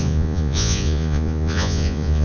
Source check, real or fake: fake